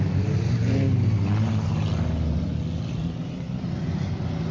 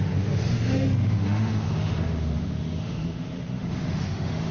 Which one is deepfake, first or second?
second